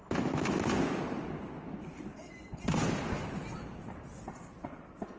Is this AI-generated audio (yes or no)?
no